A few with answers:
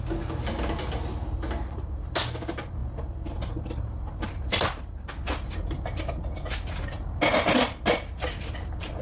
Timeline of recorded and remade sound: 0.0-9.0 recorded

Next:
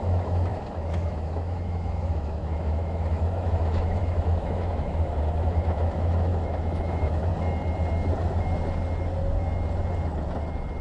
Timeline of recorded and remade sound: 0.0-7.3 remade; 7.3-10.8 recorded

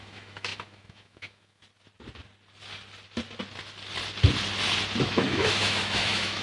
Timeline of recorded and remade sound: 0.0-1.6 remade; 1.6-5.0 recorded; 5.0-6.4 remade